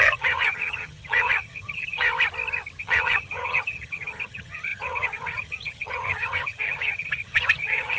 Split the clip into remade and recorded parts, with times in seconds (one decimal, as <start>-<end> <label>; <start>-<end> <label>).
0.0-2.1 remade; 2.1-2.8 recorded; 2.8-8.0 remade